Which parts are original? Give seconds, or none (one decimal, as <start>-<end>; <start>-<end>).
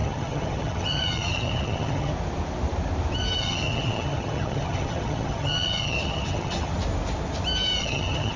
2.1-3.4; 6.7-7.8